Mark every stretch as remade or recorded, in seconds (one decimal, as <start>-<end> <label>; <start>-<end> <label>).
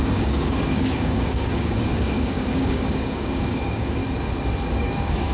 0.0-4.0 remade; 4.0-4.7 recorded; 4.7-5.3 remade